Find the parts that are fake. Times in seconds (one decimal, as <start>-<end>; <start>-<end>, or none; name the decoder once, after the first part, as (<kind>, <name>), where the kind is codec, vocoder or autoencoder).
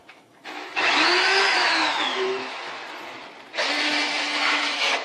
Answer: 0.0-2.8 (autoencoder, DAC-VAE); 4.2-5.0